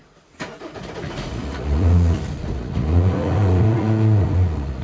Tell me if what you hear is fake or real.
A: fake